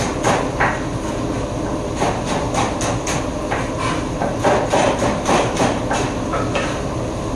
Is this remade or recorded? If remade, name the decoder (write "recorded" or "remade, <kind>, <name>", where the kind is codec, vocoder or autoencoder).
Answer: recorded